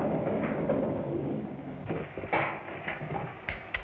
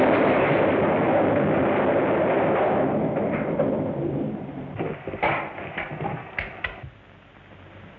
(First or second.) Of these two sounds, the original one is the second